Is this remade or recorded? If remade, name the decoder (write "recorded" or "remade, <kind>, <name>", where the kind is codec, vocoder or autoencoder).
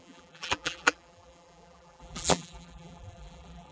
remade, vocoder, BigVGAN v2